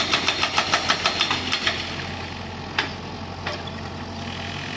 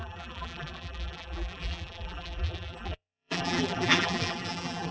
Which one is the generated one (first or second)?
second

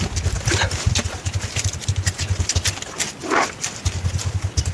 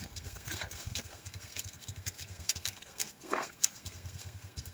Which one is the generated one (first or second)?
second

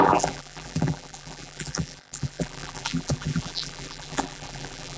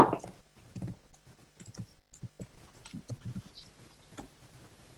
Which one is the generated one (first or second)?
first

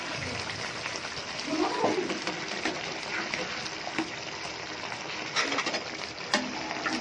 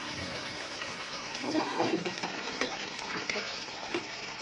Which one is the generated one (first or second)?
second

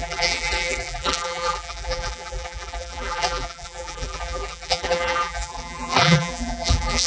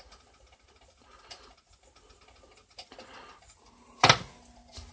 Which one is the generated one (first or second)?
first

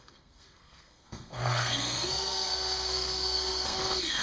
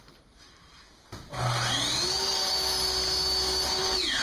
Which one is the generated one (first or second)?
first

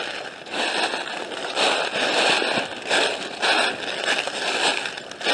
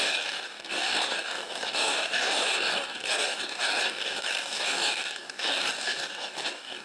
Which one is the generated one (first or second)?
second